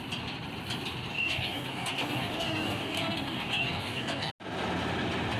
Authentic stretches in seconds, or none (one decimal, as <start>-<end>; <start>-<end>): 0.0-1.1; 4.3-5.4